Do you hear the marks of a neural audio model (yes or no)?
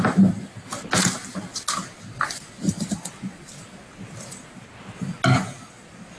no